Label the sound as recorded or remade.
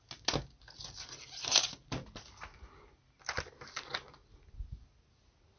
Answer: recorded